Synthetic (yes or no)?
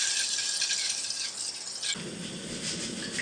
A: no